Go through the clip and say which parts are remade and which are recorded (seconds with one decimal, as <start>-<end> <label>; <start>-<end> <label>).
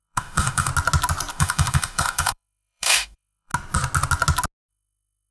0.0-0.7 remade; 0.7-1.3 recorded; 1.3-3.5 remade; 3.5-4.7 recorded; 4.7-5.3 remade